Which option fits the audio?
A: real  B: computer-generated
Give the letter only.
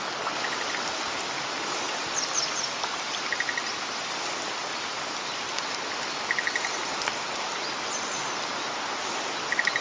A